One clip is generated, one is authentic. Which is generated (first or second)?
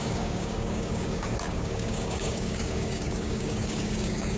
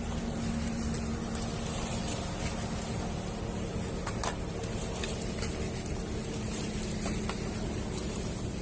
first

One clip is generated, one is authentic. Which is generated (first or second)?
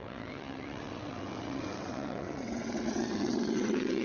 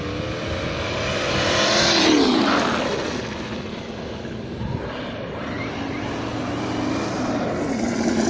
first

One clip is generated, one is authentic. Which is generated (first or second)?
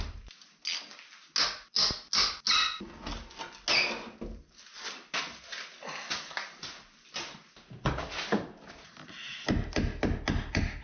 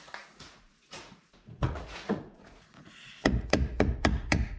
second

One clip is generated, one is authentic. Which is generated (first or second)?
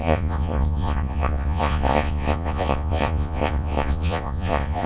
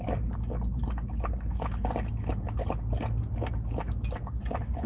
first